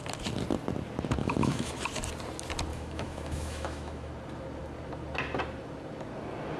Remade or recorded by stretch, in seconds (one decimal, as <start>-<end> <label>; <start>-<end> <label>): 0.0-1.2 recorded; 1.2-1.7 remade; 1.7-2.7 recorded; 2.7-4.1 remade; 4.1-6.6 recorded